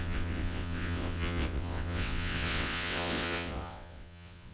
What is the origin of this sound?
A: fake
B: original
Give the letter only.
A